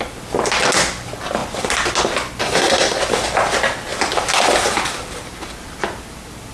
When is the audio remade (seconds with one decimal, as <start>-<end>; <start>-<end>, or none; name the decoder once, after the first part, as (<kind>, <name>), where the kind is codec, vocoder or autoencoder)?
2.4-3.0 (codec, SNAC)